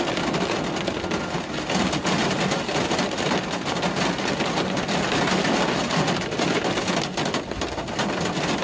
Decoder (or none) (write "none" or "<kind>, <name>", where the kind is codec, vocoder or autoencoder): none